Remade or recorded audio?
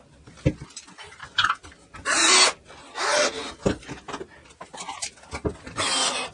recorded